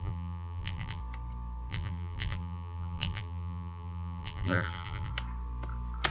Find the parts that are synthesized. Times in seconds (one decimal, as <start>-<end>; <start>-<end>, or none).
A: 0.0-1.0; 1.7-5.1